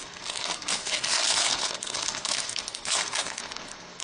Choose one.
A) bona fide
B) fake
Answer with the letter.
B